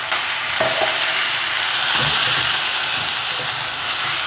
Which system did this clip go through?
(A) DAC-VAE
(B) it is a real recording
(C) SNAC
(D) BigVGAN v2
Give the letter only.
B